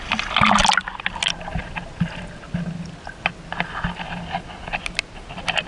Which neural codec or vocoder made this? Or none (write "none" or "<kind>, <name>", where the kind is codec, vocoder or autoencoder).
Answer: none